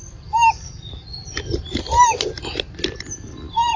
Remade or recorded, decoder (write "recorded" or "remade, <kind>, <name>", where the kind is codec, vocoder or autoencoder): recorded